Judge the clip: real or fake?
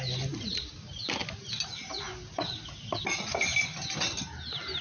real